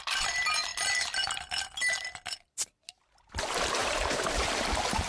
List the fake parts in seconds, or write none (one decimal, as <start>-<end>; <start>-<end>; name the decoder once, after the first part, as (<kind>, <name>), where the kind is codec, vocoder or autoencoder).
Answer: 3.8-5.1 (vocoder, BigVGAN v2)